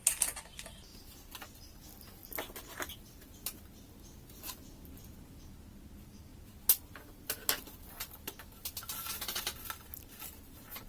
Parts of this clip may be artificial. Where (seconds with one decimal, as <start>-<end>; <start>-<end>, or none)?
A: none